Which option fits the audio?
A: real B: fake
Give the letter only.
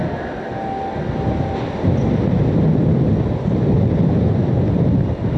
A